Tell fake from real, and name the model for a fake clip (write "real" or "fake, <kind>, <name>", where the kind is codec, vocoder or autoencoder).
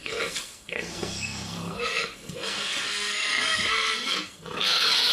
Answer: fake, codec, SNAC